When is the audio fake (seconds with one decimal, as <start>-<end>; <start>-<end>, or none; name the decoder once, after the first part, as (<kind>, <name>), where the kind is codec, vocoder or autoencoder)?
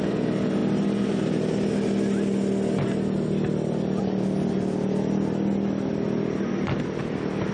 none